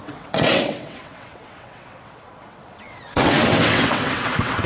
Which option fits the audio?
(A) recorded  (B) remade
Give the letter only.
B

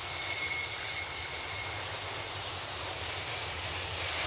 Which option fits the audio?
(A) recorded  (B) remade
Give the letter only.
A